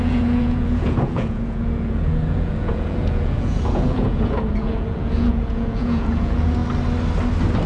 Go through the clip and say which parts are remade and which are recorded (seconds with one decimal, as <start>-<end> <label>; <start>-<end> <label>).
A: 0.0-6.6 remade; 6.6-7.7 recorded